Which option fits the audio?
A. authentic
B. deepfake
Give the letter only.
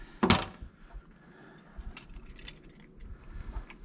A